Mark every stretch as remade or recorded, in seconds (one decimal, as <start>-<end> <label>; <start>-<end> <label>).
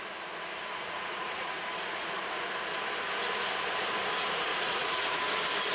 0.0-0.7 recorded; 0.7-2.5 remade; 2.5-4.5 recorded; 4.5-5.2 remade; 5.2-5.7 recorded